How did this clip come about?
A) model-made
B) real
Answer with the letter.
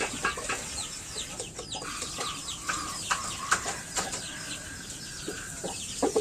A